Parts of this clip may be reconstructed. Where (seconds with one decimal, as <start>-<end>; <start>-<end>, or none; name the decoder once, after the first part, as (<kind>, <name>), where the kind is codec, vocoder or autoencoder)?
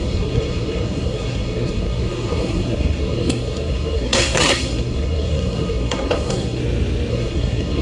0.0-6.6 (codec, SNAC); 7.1-7.8